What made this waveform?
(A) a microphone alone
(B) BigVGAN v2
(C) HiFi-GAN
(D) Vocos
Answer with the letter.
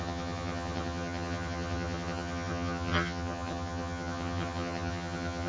C